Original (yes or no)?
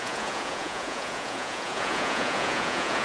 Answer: no